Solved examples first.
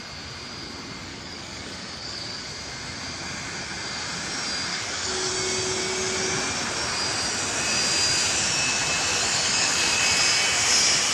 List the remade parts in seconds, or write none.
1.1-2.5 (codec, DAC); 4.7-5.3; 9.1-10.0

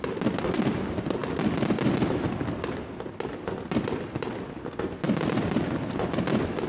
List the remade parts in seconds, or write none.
none